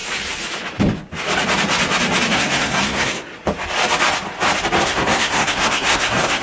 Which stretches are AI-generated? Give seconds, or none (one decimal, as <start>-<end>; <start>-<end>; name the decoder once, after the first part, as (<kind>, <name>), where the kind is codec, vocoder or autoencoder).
2.3-3.3 (codec, SNAC); 4.8-6.4